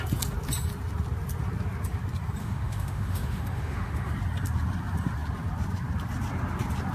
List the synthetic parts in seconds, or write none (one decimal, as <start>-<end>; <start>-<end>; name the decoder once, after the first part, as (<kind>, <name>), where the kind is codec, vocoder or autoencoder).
2.4-4.1 (autoencoder, DAC-VAE)